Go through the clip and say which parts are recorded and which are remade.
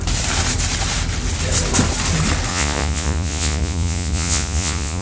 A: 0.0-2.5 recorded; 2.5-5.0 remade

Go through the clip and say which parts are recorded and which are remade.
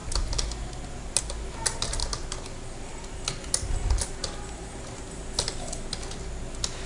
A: 0.0-6.9 recorded